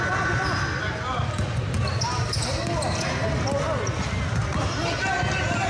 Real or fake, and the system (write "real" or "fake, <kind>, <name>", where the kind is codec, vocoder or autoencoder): real